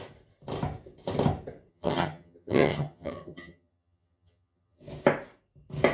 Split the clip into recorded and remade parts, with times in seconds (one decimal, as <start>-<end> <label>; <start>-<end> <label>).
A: 0.0-1.7 recorded; 1.7-4.8 remade; 4.8-5.9 recorded